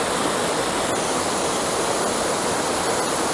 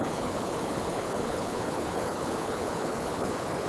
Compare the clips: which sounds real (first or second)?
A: first